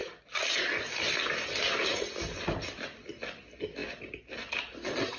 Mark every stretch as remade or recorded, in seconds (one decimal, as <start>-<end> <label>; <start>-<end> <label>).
0.0-5.2 recorded